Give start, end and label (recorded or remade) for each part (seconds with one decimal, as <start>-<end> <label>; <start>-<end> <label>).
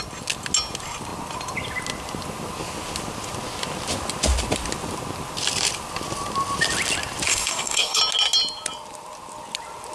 0.0-7.3 recorded; 7.3-8.0 remade; 8.0-9.9 recorded